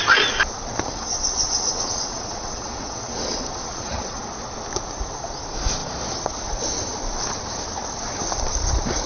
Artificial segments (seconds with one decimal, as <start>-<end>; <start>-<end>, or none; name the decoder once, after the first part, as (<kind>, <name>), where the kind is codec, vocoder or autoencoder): 0.9-4.2 (vocoder, WaveNeXt)